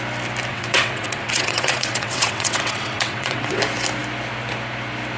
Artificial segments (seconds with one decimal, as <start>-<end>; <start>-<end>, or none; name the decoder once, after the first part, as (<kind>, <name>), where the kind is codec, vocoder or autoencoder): 0.5-3.6 (vocoder, WaveNeXt)